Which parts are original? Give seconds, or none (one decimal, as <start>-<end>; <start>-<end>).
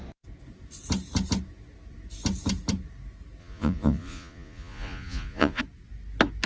0.0-3.4; 5.6-6.5